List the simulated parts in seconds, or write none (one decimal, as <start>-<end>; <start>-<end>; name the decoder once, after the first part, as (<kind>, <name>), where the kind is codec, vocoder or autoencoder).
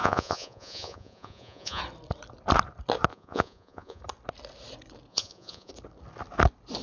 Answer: 0.0-1.8 (vocoder, Vocos); 3.1-4.0; 5.1-5.7